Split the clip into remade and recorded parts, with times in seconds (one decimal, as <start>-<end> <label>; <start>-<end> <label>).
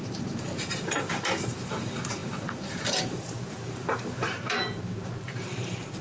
0.0-5.1 remade; 5.1-6.0 recorded